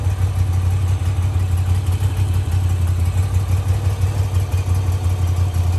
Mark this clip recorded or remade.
recorded